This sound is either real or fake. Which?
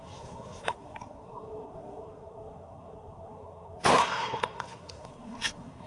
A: fake